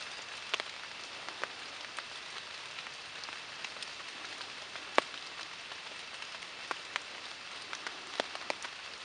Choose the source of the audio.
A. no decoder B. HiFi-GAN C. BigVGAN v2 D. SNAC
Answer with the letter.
A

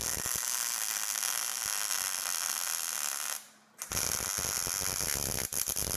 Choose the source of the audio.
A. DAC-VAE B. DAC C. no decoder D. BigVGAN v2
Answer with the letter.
C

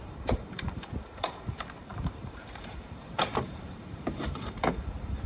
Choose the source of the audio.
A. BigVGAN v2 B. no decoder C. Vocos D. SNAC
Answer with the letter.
A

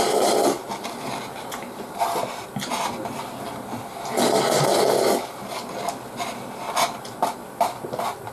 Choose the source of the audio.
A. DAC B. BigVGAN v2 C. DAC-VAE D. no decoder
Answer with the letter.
D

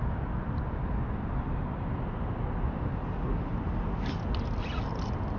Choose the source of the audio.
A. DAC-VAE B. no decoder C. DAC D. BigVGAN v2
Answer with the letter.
B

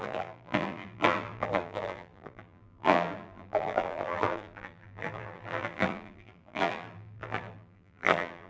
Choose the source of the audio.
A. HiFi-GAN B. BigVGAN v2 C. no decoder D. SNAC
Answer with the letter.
B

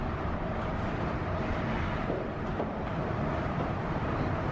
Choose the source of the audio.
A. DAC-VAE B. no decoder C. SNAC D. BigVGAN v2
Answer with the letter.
D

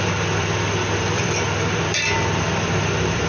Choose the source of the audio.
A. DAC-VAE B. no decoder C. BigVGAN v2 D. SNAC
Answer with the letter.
C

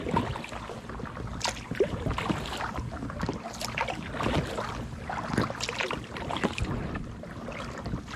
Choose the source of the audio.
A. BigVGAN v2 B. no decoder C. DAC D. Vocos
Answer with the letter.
B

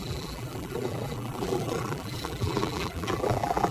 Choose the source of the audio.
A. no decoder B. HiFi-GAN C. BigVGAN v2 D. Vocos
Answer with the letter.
C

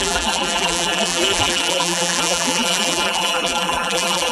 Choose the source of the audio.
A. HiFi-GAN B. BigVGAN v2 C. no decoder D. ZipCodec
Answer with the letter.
B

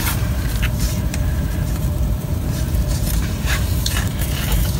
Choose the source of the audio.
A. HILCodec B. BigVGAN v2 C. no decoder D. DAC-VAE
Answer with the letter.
B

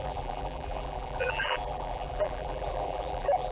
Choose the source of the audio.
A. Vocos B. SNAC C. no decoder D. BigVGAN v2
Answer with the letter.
D